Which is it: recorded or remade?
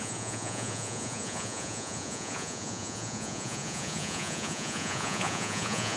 remade